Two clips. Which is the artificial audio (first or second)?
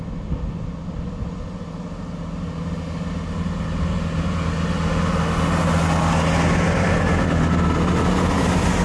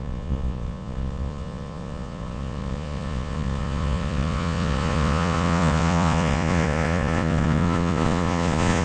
second